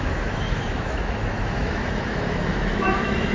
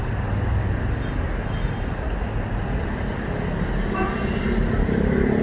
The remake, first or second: first